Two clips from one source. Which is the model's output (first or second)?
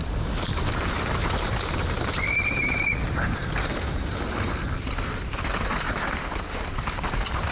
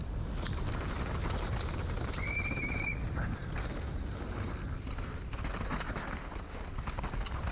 first